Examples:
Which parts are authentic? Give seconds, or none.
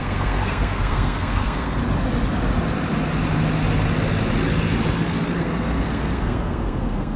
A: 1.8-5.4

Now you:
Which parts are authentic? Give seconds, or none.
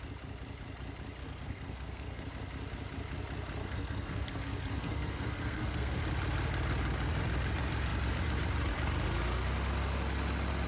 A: 0.0-1.2; 2.3-3.6; 6.0-10.7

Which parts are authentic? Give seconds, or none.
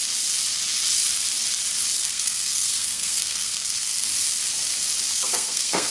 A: 0.0-2.0; 4.1-5.1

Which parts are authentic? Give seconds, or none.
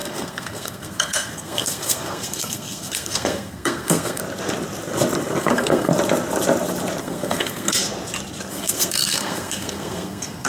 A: 4.2-5.4; 5.9-7.0; 7.8-8.5